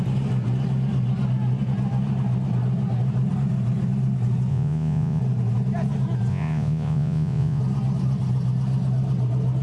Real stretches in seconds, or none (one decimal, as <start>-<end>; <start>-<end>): 0.0-4.5; 5.2-6.3; 7.6-9.6